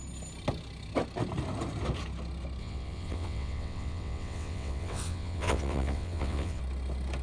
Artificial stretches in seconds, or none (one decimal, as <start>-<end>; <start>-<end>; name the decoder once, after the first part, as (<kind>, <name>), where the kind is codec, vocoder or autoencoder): 2.6-6.6 (vocoder, WaveNeXt)